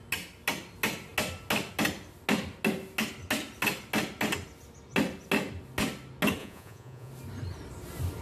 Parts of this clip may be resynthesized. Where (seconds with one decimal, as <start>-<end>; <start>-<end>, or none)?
6.4-7.1